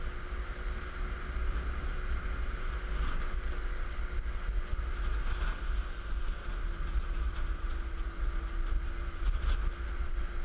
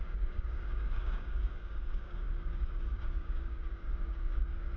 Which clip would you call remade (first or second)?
second